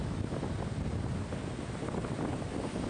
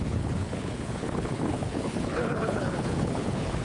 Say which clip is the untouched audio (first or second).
first